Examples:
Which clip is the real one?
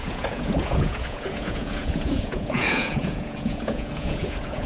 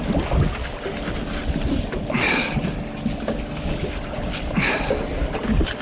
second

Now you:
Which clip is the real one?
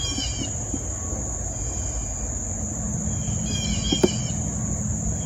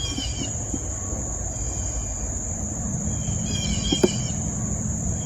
first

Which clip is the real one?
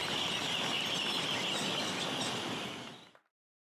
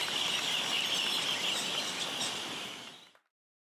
first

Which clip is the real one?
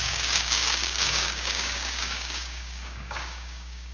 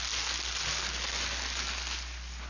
second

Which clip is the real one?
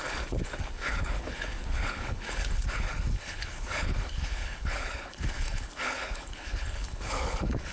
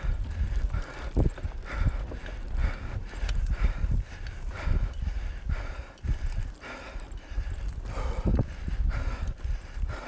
second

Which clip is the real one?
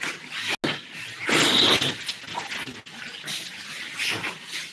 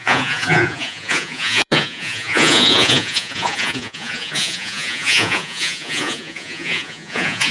first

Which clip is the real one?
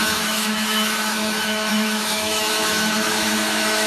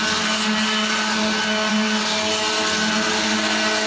second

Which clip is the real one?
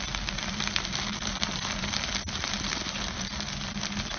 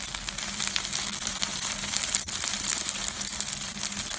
second